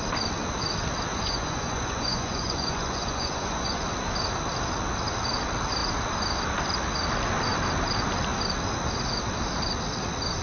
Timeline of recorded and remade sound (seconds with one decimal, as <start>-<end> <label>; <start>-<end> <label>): 0.0-1.1 recorded; 1.1-3.8 remade; 3.8-10.4 recorded